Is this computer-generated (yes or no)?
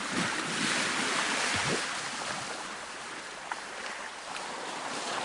no